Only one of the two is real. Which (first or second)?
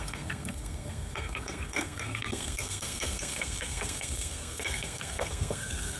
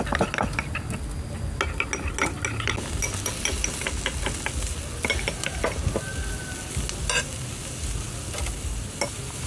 second